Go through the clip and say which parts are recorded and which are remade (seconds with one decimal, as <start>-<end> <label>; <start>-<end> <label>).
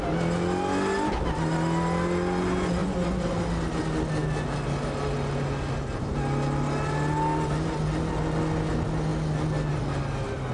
0.0-2.8 recorded; 2.8-3.4 remade; 3.4-10.5 recorded